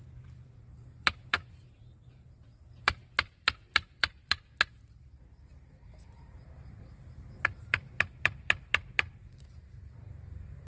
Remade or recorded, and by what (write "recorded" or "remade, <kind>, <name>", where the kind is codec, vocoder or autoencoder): remade, vocoder, BigVGAN v2